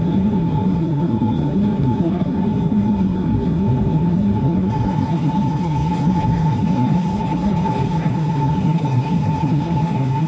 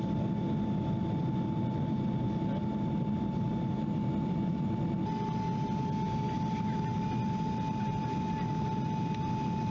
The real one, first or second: second